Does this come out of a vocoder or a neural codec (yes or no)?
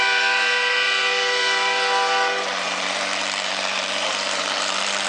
yes